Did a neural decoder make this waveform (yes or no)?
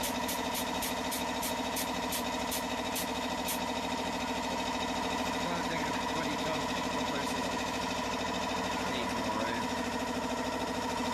no